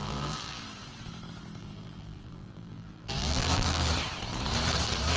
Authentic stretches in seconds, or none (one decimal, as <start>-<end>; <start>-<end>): 0.6-1.6; 3.9-5.2